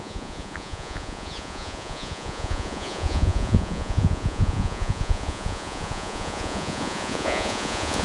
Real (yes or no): no